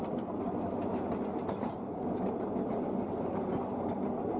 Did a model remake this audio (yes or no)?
no